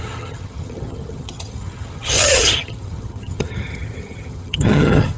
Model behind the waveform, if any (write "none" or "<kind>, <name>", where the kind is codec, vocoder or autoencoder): vocoder, HiFi-GAN